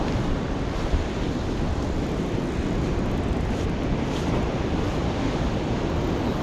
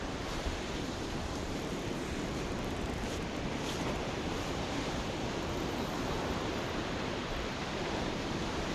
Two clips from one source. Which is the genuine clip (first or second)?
first